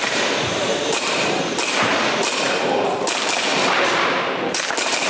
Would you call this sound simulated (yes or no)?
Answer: yes